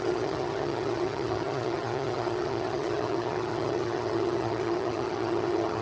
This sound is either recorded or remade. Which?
remade